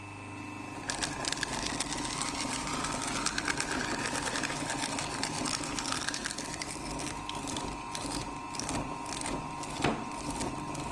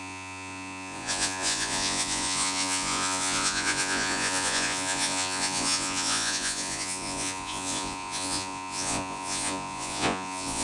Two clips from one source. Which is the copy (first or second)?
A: second